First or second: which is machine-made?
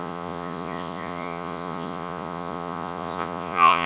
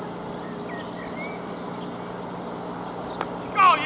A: first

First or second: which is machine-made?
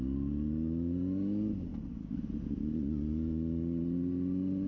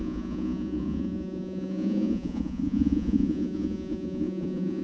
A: second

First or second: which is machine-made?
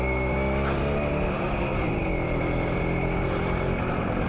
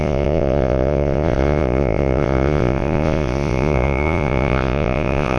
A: second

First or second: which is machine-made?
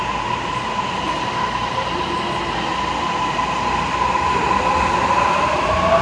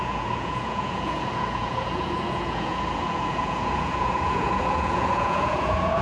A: second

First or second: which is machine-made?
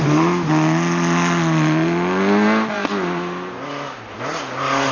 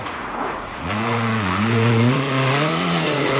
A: second